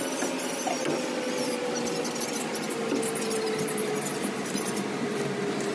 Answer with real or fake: real